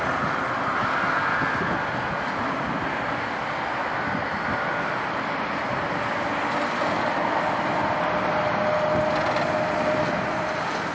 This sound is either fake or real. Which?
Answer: real